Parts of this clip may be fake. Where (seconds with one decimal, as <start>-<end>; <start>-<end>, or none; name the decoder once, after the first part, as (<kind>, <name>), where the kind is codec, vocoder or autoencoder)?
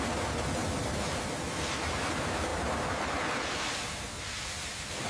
0.6-1.2 (vocoder, BigVGAN v2)